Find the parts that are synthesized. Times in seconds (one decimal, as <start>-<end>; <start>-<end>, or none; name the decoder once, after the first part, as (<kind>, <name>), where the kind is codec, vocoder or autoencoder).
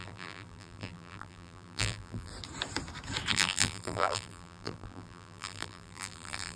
0.0-2.3 (vocoder, BigVGAN v2); 3.3-6.6